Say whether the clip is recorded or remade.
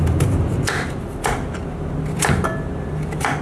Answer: recorded